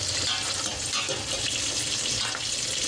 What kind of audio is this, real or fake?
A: real